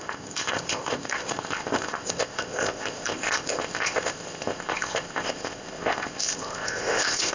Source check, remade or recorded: remade